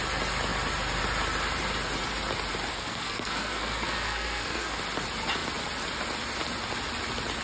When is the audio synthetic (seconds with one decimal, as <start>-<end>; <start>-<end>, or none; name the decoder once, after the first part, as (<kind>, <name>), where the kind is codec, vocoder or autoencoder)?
2.7-4.8 (codec, SNAC)